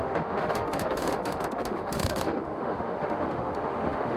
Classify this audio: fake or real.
fake